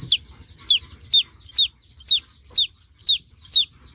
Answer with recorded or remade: recorded